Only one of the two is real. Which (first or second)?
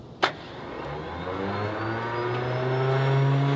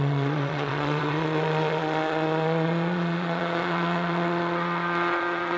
first